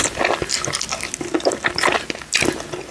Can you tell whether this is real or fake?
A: real